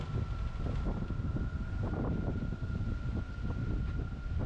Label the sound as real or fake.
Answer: real